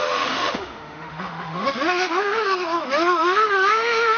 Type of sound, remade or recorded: remade